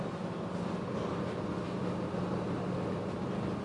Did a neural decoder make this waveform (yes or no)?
no